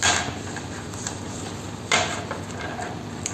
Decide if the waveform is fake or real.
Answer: real